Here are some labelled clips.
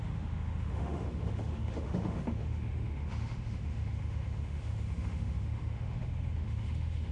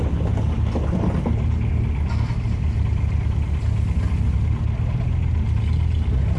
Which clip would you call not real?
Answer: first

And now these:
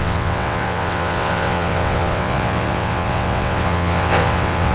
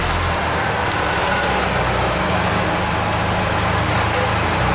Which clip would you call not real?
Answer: first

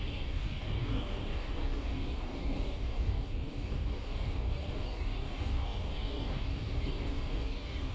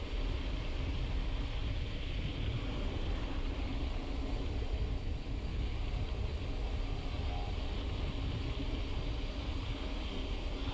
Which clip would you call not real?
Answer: first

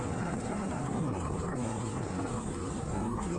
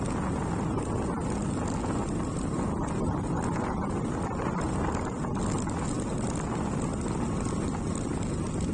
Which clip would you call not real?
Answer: first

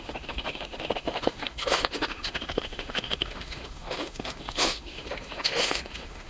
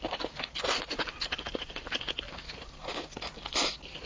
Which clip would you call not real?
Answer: first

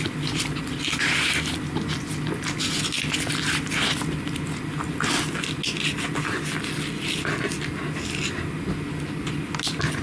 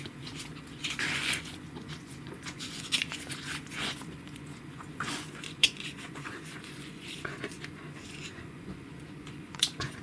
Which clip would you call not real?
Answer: second